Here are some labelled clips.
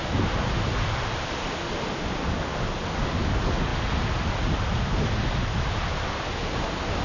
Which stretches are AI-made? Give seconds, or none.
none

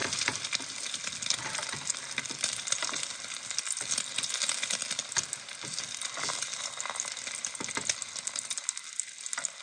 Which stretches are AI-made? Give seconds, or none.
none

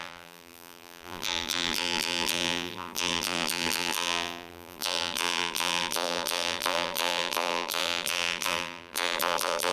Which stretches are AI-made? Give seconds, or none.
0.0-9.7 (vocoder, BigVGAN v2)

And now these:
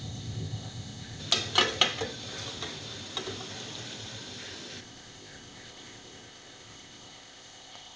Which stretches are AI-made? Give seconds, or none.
0.0-1.2 (codec, ZipCodec); 4.8-8.0